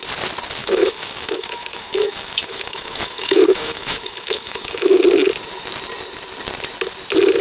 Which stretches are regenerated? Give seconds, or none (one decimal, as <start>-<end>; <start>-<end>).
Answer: 0.6-5.0